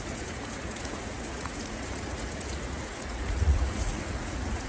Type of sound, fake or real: fake